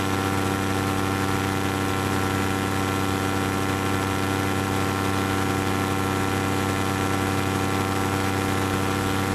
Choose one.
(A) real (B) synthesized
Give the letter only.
A